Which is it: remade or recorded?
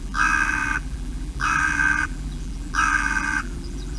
remade